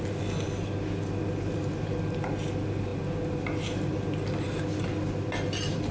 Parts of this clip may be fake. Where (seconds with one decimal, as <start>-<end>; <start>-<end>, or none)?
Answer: none